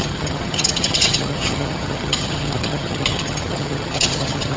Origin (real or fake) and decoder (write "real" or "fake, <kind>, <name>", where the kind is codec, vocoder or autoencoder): fake, vocoder, HiFi-GAN